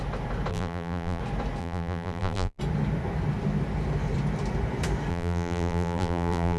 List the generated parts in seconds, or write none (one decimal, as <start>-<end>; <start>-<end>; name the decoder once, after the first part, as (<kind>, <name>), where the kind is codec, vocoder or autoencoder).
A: 0.5-1.2 (vocoder, BigVGAN v2); 1.6-2.6; 5.1-6.6